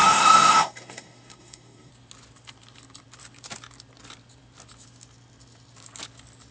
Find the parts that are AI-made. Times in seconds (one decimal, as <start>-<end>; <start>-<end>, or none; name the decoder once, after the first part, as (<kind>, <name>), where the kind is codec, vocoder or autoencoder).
0.0-1.9 (codec, SNAC)